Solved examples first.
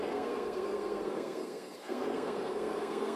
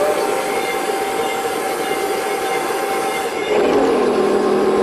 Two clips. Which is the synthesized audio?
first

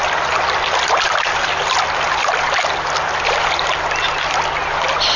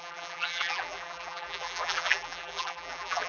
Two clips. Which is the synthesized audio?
second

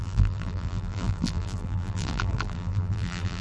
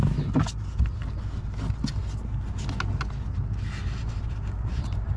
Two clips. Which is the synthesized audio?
first